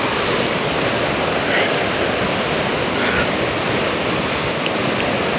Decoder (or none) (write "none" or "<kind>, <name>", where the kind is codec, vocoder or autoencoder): none